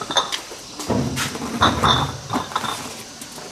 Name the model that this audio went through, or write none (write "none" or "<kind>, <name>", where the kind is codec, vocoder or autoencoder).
none